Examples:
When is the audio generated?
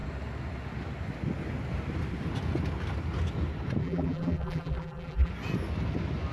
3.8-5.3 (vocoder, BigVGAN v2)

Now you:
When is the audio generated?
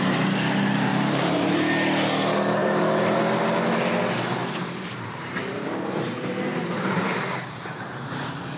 0.9-1.5 (vocoder, BigVGAN v2); 2.6-3.2; 4.4-8.6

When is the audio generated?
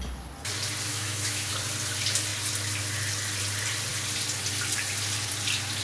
0.9-1.5 (autoencoder, DAC-VAE)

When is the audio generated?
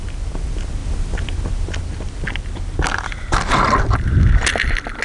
none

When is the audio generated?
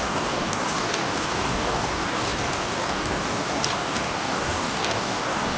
0.0-5.6 (codec, DAC)